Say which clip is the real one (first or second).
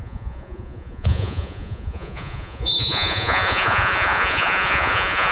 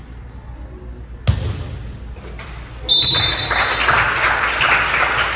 second